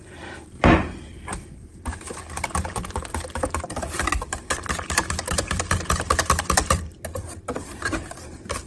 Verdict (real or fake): fake